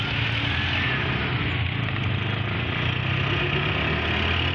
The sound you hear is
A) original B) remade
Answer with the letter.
A